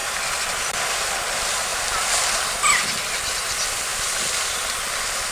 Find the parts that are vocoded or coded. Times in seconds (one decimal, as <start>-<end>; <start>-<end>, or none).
0.5-1.7; 3.3-5.3